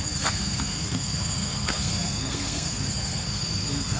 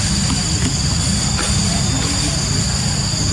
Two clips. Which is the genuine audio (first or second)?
second